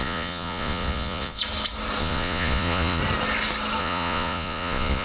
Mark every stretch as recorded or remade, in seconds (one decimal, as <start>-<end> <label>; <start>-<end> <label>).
0.0-1.4 remade; 1.4-2.0 recorded; 2.0-3.0 remade; 3.0-3.8 recorded; 3.8-5.0 remade

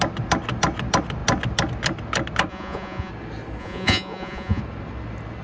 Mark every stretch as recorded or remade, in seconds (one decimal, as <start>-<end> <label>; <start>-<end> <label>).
0.0-2.5 recorded; 2.5-3.1 remade; 3.1-3.6 recorded; 3.6-4.6 remade; 4.6-5.4 recorded

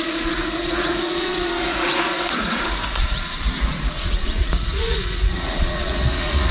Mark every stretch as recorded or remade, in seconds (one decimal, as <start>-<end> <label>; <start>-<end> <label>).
0.0-6.5 remade

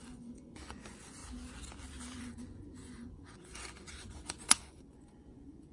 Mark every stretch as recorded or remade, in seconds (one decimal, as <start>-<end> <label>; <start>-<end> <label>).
0.0-1.2 remade; 1.2-2.2 recorded; 2.2-5.7 remade

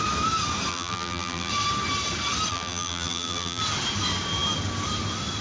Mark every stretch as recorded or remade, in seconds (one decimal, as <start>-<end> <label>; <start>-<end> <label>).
0.0-0.7 recorded; 0.7-1.5 remade; 1.5-2.5 recorded; 2.5-3.6 remade; 3.6-5.4 recorded

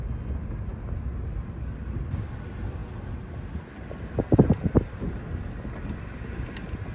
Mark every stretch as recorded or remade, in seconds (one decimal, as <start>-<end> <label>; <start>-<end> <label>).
0.0-6.9 recorded